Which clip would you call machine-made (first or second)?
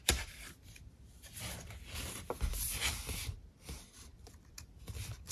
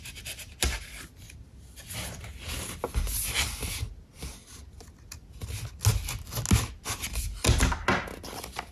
first